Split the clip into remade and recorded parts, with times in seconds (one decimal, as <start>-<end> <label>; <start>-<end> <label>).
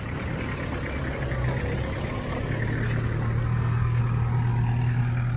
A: 0.0-3.4 recorded; 3.4-4.0 remade; 4.0-5.4 recorded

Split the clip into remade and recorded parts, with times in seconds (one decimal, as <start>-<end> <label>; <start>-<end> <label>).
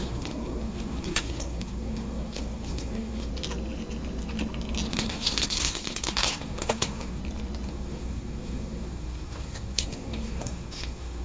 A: 0.0-3.3 remade; 3.3-4.9 recorded; 4.9-7.2 remade; 7.2-7.7 recorded; 7.7-11.2 remade